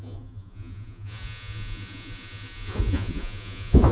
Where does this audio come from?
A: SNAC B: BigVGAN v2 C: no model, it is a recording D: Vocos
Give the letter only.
D